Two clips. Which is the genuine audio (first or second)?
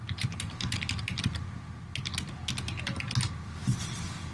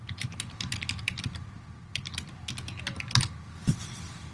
first